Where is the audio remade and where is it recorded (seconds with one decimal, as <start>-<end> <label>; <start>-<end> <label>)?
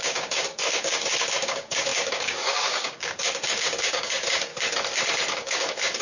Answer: 0.0-4.5 remade; 4.5-5.3 recorded; 5.3-6.0 remade